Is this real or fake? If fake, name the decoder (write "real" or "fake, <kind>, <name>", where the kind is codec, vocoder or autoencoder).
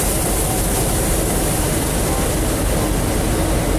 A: real